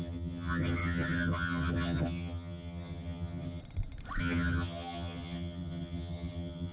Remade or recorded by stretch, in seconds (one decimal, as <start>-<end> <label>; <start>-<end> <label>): 0.0-3.6 remade; 3.6-4.2 recorded; 4.2-6.7 remade